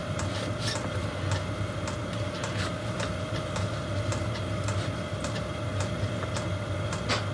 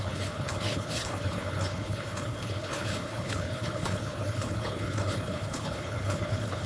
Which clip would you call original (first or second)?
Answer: first